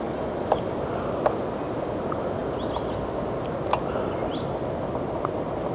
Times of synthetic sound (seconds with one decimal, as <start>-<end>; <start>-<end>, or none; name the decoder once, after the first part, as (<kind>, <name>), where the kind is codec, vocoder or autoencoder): none